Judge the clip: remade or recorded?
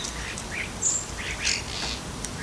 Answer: recorded